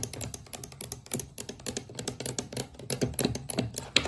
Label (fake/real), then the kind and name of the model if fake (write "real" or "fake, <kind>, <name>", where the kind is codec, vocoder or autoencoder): real